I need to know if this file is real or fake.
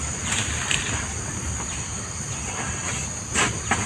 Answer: real